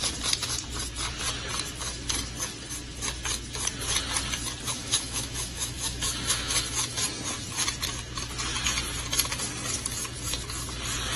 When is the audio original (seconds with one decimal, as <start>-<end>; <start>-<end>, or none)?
0.0-4.7; 7.0-11.2